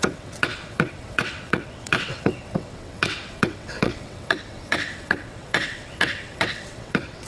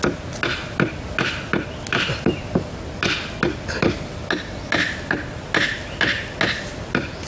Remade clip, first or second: first